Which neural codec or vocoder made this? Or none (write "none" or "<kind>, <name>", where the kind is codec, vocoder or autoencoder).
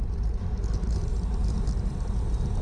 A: none